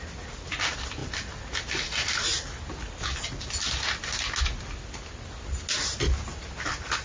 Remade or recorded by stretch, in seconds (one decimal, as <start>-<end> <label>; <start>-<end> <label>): 0.0-7.0 recorded